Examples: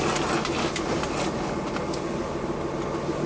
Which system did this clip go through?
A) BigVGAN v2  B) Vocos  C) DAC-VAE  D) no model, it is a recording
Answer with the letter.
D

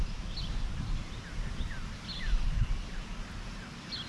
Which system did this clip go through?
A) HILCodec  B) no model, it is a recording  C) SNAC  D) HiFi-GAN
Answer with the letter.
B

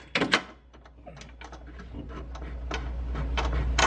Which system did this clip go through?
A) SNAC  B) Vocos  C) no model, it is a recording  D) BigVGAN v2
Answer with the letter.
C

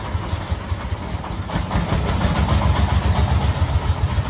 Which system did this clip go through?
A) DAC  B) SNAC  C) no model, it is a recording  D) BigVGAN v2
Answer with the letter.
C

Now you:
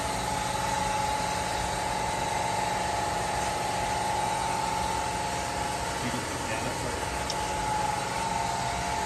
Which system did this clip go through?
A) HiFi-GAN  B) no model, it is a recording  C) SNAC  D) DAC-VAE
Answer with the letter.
B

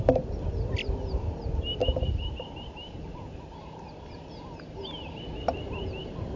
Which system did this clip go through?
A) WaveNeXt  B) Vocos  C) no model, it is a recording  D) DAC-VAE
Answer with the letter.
C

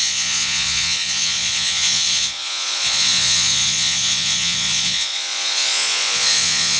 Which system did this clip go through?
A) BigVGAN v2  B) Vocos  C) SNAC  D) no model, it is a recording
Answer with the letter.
B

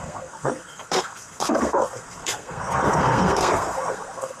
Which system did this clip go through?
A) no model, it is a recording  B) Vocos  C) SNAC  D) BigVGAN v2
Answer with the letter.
C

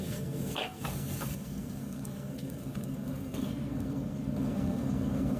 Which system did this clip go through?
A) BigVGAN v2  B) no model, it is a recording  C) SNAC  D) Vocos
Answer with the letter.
C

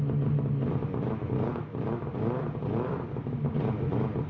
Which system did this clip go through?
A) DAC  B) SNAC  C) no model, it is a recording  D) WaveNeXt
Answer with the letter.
C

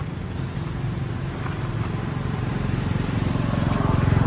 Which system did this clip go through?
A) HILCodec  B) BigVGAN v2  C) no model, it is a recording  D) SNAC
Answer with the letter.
C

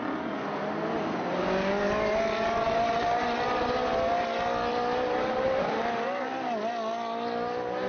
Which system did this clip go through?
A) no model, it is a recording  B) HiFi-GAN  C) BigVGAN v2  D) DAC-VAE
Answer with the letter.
A